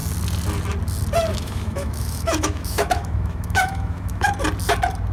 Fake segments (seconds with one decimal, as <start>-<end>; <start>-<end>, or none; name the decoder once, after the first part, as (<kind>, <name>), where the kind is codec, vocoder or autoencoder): 1.3-4.3 (autoencoder, DAC-VAE)